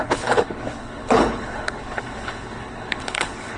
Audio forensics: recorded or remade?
remade